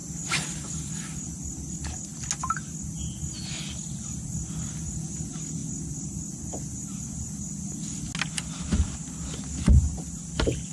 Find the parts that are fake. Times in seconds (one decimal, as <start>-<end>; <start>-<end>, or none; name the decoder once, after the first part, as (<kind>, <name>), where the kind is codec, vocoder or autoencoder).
0.0-0.9 (vocoder, BigVGAN v2)